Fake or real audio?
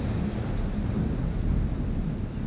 real